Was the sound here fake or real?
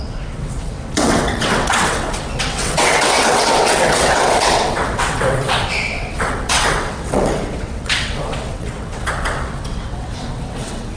fake